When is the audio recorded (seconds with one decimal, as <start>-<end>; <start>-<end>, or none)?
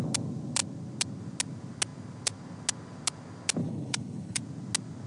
0.0-3.6; 4.4-5.1